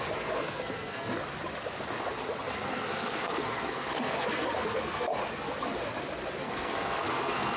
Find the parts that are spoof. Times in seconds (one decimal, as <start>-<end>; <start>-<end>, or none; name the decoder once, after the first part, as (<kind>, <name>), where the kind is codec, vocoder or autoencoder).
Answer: 0.0-1.2 (codec, SNAC); 2.5-5.1; 6.4-7.6